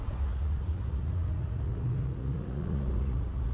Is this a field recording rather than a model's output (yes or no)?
no